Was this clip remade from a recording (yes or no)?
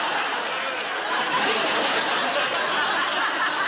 no